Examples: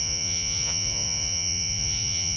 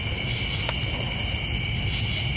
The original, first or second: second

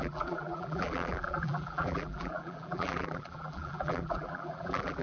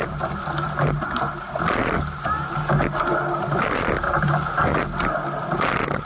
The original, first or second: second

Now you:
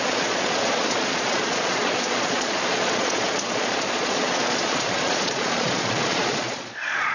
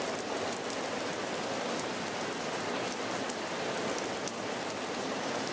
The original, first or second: second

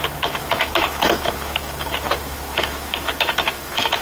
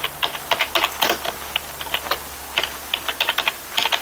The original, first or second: second